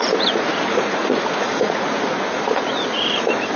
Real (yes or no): no